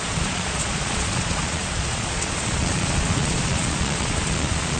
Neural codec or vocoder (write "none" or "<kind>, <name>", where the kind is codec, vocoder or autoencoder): vocoder, Vocos